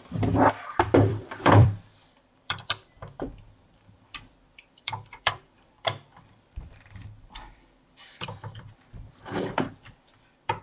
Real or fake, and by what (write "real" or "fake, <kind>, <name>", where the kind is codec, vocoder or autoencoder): fake, vocoder, BigVGAN v2